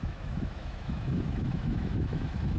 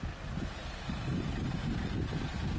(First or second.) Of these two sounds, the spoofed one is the first